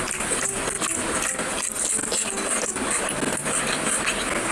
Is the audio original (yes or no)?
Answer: yes